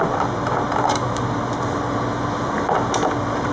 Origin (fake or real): real